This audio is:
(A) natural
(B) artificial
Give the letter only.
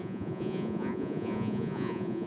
B